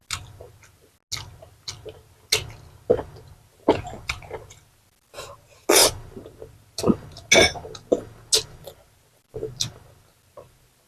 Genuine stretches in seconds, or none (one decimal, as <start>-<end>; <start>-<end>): 0.0-3.5; 4.6-10.9